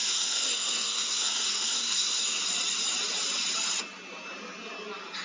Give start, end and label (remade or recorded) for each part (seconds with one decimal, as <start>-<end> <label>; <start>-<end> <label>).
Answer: 0.0-2.4 remade; 2.4-5.2 recorded